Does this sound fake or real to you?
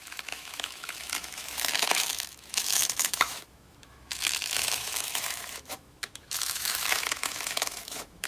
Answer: fake